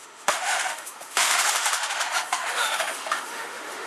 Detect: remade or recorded remade